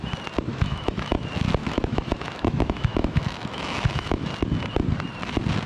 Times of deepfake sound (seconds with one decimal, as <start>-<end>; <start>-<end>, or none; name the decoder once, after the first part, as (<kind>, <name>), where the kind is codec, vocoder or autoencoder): 0.5-1.1 (autoencoder, DAC-VAE); 1.6-4.3